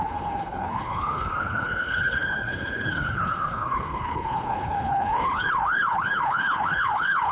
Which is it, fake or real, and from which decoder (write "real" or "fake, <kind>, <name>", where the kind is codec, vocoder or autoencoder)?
fake, codec, HILCodec